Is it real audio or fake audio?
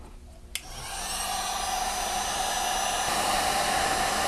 real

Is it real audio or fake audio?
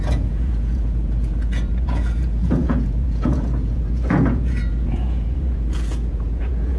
fake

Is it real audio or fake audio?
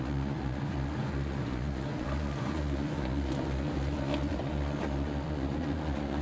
fake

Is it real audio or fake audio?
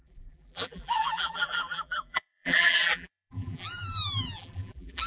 fake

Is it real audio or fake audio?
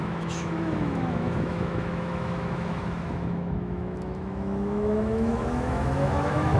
fake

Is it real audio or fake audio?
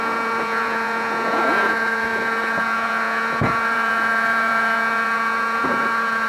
fake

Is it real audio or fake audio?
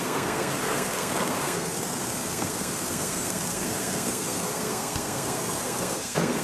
fake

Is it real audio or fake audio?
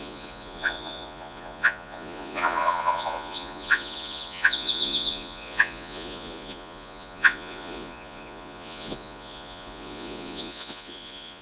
fake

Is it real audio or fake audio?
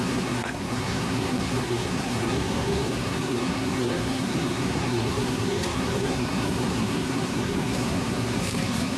fake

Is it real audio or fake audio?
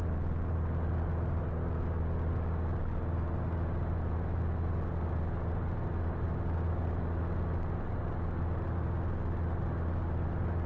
real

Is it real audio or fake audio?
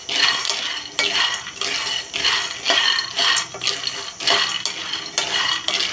real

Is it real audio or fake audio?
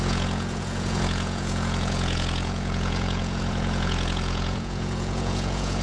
fake